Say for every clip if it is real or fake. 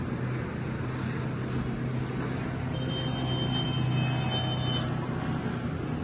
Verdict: real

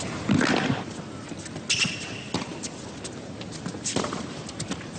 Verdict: real